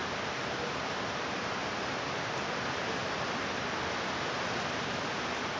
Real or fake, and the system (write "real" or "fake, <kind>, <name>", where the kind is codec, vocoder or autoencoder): real